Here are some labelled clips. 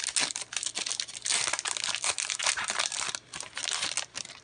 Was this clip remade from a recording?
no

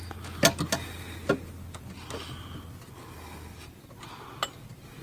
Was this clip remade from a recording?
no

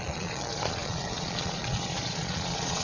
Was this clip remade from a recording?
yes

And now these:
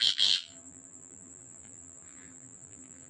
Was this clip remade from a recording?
yes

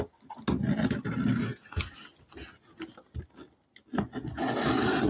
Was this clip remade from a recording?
no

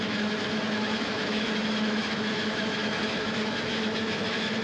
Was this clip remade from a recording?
yes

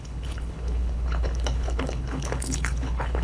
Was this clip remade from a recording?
yes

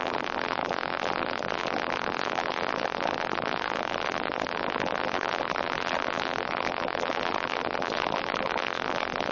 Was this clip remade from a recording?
yes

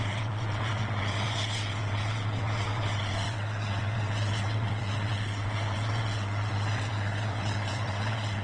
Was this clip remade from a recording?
yes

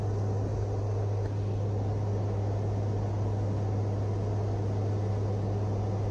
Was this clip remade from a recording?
no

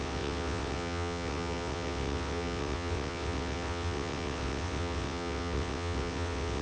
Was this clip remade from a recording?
yes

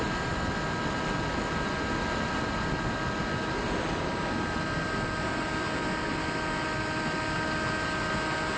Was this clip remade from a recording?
no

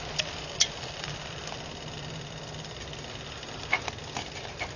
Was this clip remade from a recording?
no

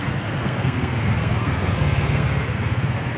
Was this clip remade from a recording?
yes